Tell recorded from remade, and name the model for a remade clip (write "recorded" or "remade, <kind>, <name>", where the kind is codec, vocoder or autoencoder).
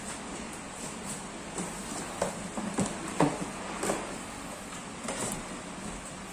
recorded